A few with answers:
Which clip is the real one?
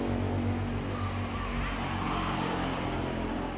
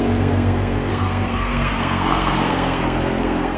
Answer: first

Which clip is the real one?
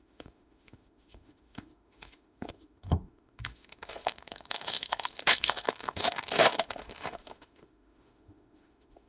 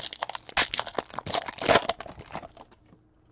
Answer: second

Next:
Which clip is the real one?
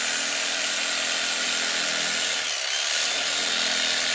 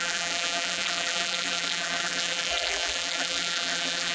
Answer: first